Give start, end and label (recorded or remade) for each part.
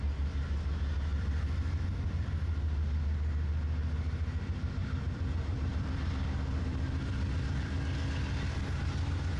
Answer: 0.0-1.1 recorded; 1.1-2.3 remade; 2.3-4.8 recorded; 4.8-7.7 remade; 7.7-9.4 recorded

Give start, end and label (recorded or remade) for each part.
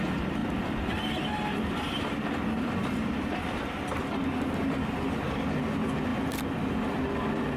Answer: 0.0-7.6 recorded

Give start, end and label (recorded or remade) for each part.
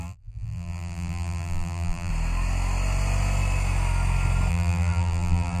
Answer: 0.0-2.1 remade; 2.1-4.5 recorded; 4.5-5.6 remade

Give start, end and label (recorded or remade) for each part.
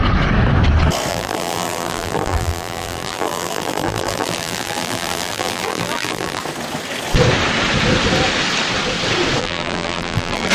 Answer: 0.0-1.1 recorded; 1.1-6.4 remade; 6.4-9.4 recorded; 9.4-10.5 remade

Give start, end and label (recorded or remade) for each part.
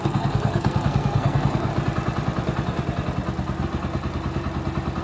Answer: 0.0-1.7 remade; 1.7-5.0 recorded